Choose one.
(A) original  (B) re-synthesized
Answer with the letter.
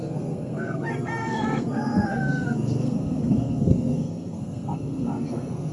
B